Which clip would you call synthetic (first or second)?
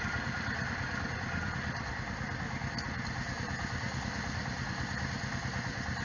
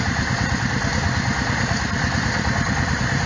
second